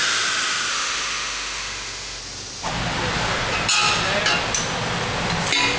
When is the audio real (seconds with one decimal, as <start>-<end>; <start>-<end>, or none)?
0.0-0.7; 2.2-5.8